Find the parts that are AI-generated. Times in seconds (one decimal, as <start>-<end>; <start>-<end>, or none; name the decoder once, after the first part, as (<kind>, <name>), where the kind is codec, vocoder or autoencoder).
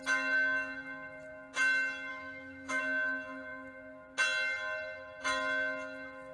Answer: 2.1-2.8 (autoencoder, DAC-VAE)